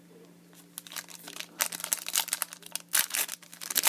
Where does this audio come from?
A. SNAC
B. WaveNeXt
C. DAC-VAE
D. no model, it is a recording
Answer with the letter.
D